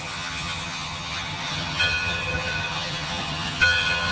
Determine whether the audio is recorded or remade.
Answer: remade